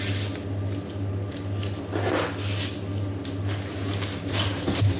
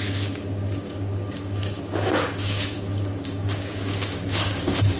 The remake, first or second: second